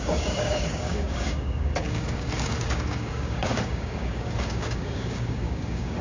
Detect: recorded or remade remade